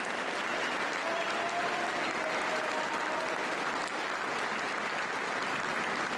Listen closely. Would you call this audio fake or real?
real